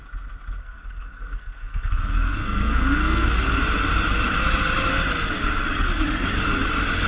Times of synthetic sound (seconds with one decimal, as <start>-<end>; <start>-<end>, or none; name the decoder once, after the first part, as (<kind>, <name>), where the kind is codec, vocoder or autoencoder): 0.6-3.4 (codec, SNAC)